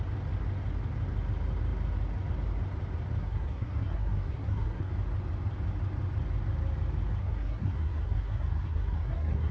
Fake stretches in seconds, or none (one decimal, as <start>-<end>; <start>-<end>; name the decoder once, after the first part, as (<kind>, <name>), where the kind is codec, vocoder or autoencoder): 3.2-4.9 (codec, SNAC); 7.2-9.5